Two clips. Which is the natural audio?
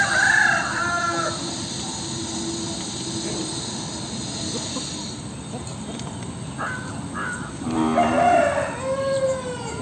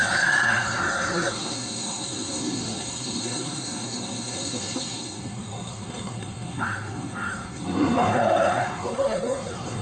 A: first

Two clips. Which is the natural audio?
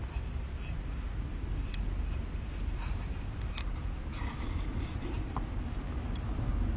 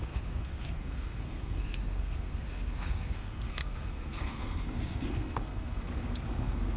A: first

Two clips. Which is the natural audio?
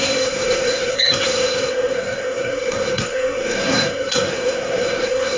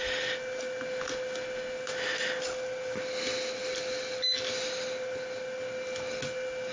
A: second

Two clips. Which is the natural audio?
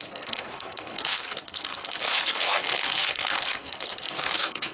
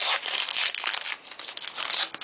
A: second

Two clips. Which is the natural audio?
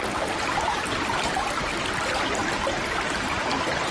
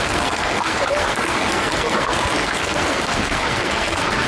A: first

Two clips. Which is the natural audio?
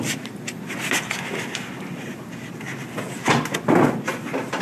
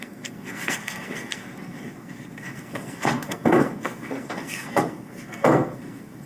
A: first